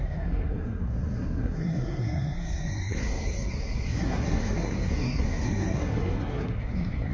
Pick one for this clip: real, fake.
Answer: fake